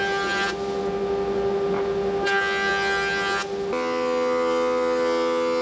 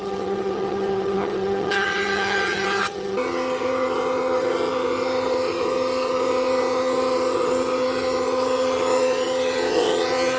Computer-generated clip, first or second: second